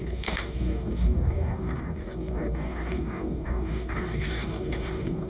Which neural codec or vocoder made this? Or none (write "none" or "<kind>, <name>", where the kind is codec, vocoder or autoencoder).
codec, DAC